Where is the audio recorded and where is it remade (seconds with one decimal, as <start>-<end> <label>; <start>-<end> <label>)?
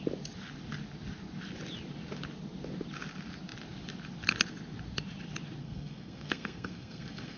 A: 0.0-5.6 recorded; 5.6-7.4 remade